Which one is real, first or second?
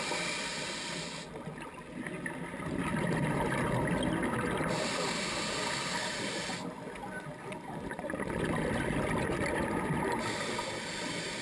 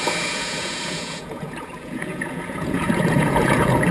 first